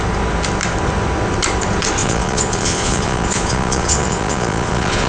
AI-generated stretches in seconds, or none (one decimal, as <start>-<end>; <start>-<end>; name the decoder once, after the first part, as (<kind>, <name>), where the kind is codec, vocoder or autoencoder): 2.0-5.1 (vocoder, Vocos)